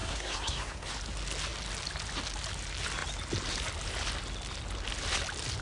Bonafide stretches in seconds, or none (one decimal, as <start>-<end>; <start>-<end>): 0.9-5.6